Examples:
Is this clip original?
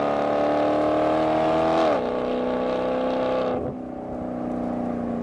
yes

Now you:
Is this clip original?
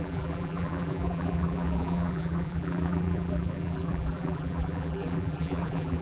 no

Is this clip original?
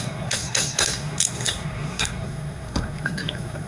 no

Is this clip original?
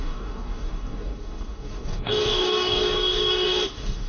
no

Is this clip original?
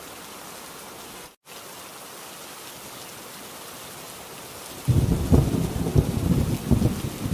yes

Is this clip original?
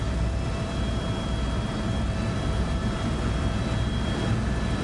no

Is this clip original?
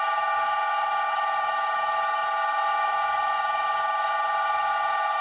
no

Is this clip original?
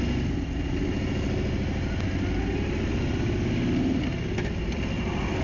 yes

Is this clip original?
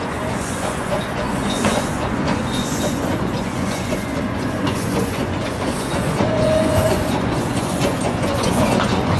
no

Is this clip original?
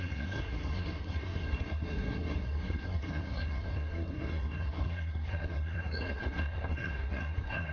no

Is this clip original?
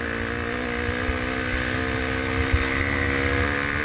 yes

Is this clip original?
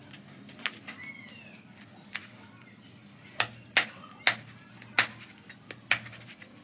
yes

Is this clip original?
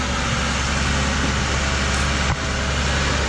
yes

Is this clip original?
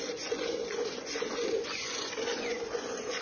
no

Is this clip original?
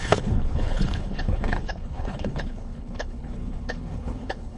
no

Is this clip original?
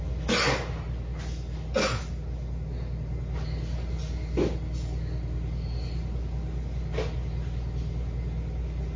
yes